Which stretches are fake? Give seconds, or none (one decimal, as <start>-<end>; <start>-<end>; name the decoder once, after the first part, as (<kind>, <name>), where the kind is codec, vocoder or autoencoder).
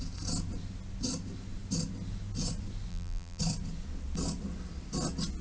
2.9-3.4 (vocoder, BigVGAN v2)